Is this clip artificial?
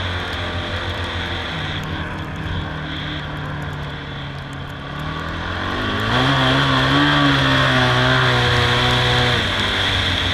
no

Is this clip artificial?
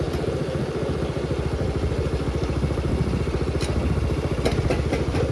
no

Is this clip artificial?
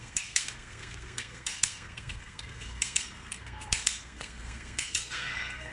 yes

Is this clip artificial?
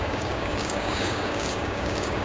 yes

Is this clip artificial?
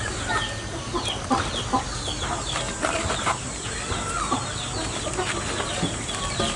no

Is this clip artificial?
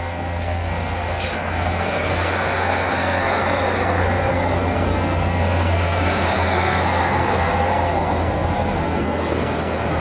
yes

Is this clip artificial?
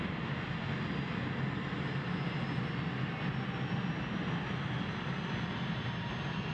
no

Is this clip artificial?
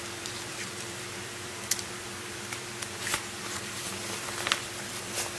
yes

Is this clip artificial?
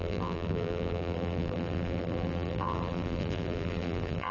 yes